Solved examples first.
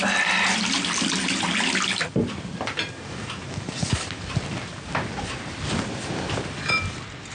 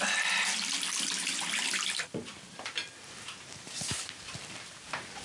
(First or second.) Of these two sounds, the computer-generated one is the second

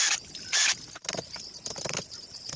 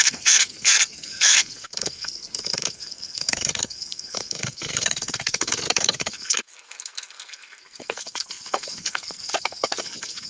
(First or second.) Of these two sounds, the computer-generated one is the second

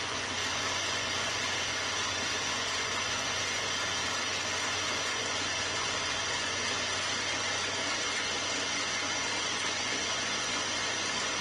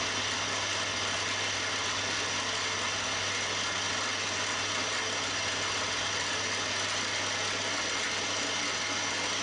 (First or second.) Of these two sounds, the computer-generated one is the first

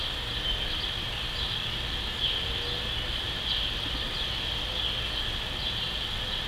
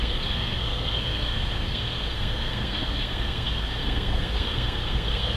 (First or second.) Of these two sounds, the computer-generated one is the second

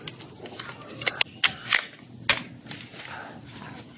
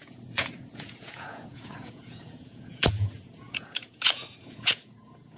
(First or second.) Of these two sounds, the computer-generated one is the second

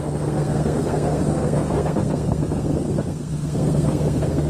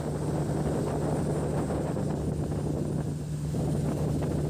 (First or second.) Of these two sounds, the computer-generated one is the first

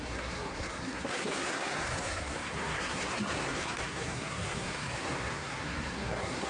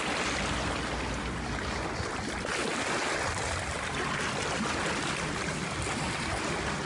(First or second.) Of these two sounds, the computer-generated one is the first